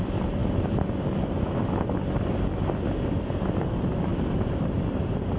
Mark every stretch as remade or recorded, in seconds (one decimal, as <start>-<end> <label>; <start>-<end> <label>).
0.0-5.4 recorded